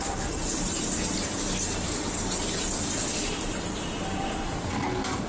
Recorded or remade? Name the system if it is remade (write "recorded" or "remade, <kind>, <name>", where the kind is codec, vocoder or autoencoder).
recorded